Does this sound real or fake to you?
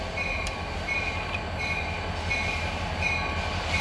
real